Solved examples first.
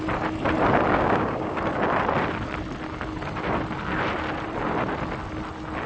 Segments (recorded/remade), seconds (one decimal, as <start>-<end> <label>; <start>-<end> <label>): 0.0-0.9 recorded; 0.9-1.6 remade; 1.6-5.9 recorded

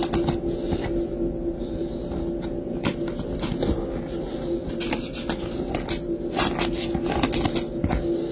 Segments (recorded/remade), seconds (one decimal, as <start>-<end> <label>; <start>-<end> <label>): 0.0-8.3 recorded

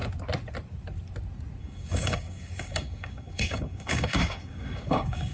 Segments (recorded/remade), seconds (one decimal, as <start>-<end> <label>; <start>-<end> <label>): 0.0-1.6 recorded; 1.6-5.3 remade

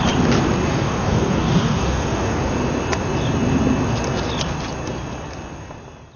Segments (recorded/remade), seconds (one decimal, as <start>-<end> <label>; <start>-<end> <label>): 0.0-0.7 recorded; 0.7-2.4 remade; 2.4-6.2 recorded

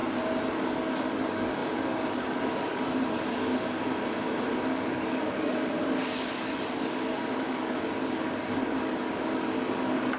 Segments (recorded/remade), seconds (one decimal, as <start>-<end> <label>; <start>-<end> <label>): 0.0-0.5 recorded; 0.5-3.5 remade; 3.5-4.7 recorded; 4.7-10.2 remade

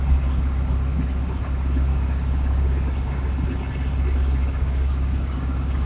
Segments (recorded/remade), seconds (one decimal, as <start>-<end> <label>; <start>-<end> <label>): 0.0-1.9 recorded; 1.9-3.3 remade; 3.3-4.4 recorded; 4.4-5.9 remade

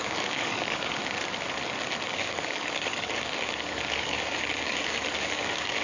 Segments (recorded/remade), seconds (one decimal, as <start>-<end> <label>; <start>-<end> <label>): 0.0-1.0 remade; 1.0-2.1 recorded; 2.1-5.8 remade

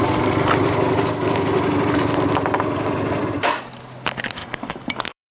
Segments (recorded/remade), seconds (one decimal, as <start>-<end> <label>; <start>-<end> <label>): 0.0-4.4 recorded; 4.4-5.3 remade